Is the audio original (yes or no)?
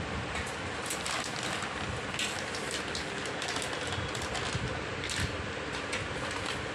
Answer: yes